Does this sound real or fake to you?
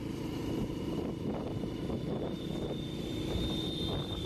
fake